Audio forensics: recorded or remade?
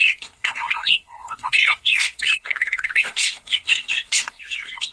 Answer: remade